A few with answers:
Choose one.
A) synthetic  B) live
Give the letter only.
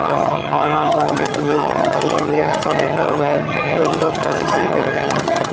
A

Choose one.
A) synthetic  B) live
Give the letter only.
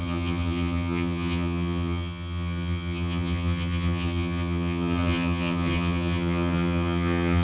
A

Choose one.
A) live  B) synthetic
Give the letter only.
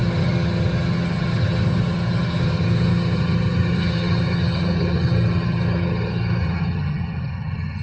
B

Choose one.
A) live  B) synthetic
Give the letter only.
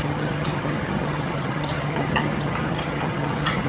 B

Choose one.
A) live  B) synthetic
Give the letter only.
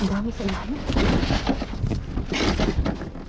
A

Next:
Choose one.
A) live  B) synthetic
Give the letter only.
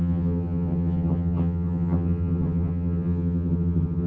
B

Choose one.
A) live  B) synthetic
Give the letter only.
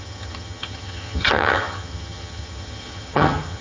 B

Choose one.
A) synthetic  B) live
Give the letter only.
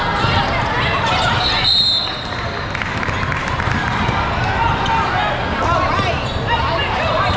B